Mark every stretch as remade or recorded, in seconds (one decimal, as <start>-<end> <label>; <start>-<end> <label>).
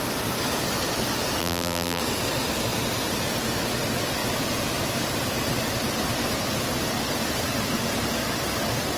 0.0-1.4 recorded; 1.4-2.0 remade; 2.0-9.0 recorded